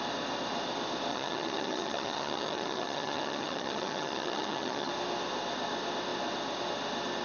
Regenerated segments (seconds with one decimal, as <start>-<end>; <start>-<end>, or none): 1.1-4.9